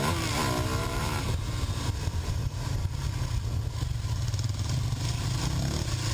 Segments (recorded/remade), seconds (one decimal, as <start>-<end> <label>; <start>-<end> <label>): 0.0-0.8 recorded; 0.8-2.9 remade; 2.9-6.1 recorded